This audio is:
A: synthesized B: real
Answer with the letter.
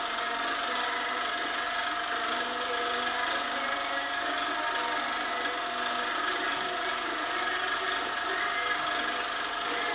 B